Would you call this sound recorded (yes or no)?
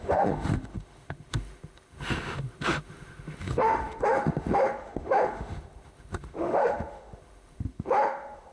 no